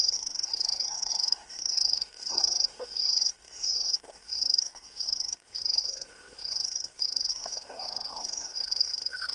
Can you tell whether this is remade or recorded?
remade